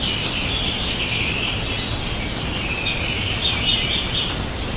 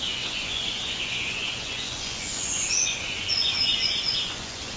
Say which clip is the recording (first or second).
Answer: first